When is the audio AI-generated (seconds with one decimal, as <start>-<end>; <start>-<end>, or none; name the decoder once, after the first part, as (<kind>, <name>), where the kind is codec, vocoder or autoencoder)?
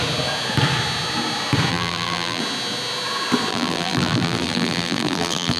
1.7-2.4 (vocoder, BigVGAN v2); 3.5-5.6